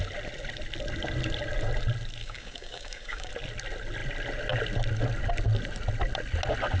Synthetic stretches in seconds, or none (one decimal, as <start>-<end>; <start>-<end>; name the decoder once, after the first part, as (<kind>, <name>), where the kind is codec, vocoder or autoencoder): 2.2-3.3 (codec, DAC)